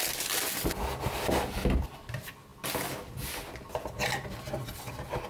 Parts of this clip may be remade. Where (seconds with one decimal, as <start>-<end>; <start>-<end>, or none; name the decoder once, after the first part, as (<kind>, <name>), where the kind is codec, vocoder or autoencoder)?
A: none

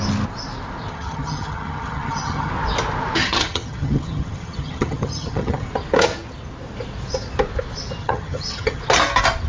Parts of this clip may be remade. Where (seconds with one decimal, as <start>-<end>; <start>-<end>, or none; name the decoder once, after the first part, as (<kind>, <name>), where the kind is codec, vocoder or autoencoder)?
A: 0.9-2.5 (vocoder, HiFi-GAN); 3.2-5.7; 8.0-8.8

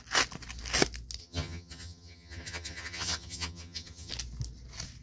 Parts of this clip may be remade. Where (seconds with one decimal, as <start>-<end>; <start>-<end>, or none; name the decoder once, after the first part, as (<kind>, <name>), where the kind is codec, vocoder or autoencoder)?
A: 1.2-4.1 (vocoder, HiFi-GAN)

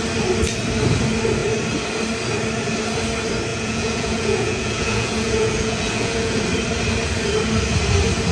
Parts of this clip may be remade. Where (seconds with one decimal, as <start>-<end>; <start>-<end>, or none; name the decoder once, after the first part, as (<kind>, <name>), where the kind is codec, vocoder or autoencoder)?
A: 3.5-6.4 (vocoder, Vocos)

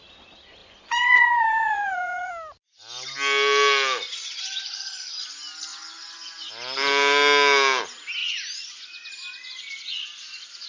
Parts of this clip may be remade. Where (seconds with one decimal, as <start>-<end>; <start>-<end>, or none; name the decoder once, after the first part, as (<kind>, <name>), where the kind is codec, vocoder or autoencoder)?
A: 0.6-2.3 (vocoder, Vocos); 5.7-6.5; 8.2-9.1